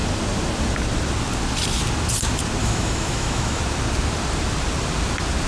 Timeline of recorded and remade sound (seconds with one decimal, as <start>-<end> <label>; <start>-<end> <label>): 0.0-2.6 recorded; 2.6-3.6 remade; 3.6-5.5 recorded